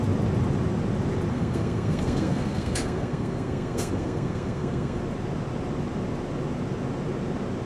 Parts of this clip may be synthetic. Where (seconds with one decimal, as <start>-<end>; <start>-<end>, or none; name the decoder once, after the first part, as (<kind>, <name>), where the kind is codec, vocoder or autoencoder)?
1.3-5.0 (codec, SNAC)